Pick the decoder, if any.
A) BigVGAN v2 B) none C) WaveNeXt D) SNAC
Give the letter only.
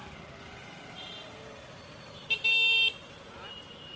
B